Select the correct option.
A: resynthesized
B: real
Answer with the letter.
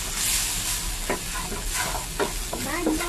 B